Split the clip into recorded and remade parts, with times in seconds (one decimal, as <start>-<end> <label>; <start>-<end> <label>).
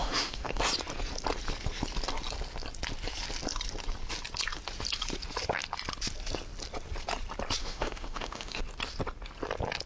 0.0-0.6 remade; 0.6-7.6 recorded; 7.6-8.6 remade; 8.6-9.9 recorded